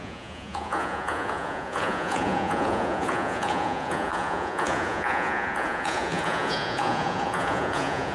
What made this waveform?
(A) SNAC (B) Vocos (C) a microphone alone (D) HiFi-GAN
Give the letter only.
B